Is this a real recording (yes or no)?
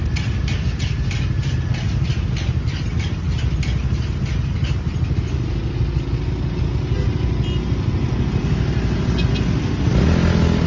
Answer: yes